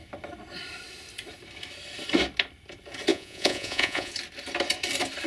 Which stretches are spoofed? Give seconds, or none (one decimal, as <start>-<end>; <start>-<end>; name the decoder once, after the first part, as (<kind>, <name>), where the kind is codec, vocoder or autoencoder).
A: 3.1-4.1 (vocoder, Vocos)